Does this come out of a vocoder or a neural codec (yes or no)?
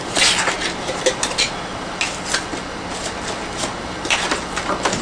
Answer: no